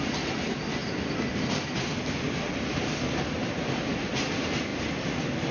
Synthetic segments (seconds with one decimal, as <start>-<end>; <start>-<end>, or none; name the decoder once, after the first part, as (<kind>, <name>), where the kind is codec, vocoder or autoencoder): none